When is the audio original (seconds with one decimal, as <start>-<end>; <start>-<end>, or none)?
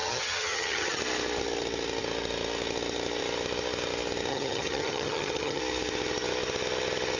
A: 1.0-4.3; 5.6-7.2